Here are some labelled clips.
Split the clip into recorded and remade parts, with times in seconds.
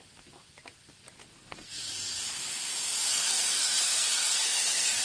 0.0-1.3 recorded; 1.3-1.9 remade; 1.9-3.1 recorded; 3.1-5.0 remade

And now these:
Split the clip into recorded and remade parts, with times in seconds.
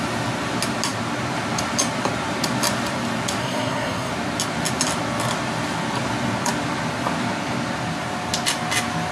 0.0-3.4 recorded; 3.4-4.1 remade; 4.1-9.1 recorded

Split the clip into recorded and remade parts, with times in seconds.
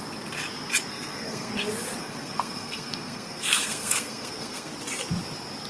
0.0-0.9 recorded; 0.9-1.5 remade; 1.5-2.0 recorded; 2.0-4.7 remade; 4.7-5.7 recorded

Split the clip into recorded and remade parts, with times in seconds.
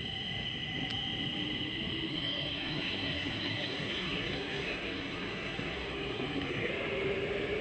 0.0-2.1 recorded; 2.1-6.7 remade; 6.7-7.6 recorded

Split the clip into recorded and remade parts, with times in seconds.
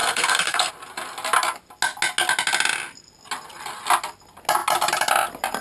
0.0-0.7 remade; 0.7-5.6 recorded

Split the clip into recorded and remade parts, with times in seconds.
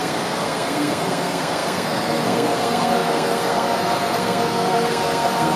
0.0-5.6 remade